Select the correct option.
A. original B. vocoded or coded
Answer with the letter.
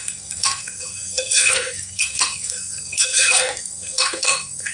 B